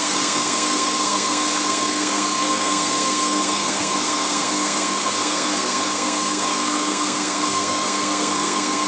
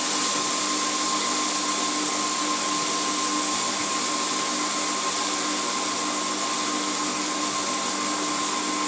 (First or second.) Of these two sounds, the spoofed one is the first